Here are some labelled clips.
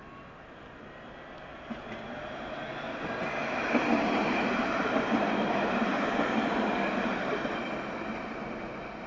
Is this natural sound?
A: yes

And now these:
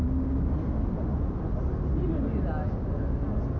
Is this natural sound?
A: yes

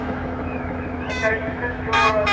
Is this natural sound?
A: no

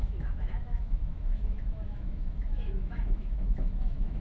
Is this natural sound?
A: no